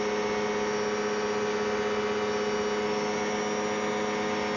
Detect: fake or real real